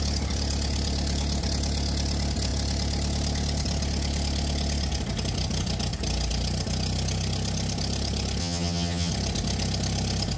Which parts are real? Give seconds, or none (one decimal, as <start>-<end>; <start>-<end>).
0.0-8.4; 9.1-10.4